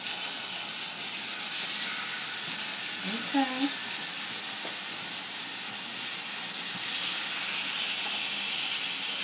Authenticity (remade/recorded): recorded